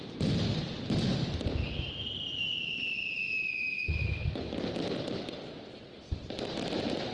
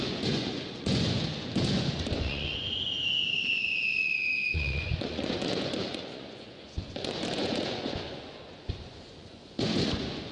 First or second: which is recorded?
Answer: first